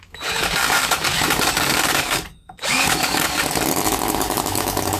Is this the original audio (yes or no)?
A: no